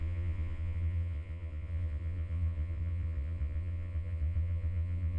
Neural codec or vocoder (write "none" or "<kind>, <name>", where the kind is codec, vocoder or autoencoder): vocoder, Vocos